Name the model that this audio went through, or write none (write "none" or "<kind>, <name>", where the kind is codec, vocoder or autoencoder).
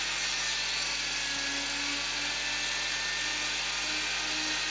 none